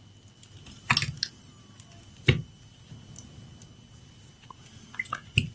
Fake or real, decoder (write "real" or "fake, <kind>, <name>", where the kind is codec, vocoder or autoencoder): real